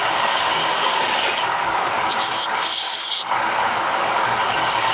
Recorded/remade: remade